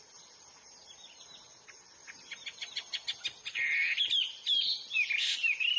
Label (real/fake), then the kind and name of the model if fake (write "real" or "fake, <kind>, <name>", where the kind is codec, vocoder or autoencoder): real